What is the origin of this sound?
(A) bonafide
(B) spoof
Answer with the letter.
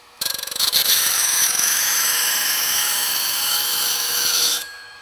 B